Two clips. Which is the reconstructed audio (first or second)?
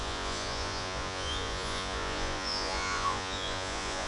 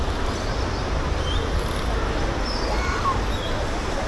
first